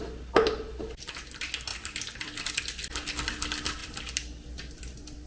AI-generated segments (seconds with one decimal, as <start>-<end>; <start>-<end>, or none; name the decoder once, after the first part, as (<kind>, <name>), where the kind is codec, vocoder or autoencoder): 1.7-2.5 (vocoder, BigVGAN v2); 3.8-5.3